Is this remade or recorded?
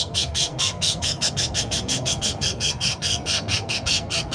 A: remade